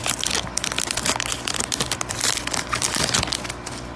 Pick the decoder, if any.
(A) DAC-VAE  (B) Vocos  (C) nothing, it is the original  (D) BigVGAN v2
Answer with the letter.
C